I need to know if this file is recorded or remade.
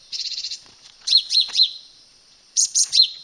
remade